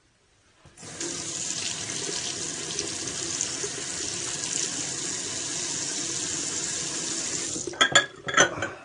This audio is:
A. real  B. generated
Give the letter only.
A